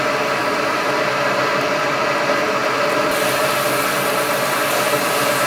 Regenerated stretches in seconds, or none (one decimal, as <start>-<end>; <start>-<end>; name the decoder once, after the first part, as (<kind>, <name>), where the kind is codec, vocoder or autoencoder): none